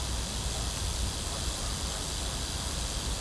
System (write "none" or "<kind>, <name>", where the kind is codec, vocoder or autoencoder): none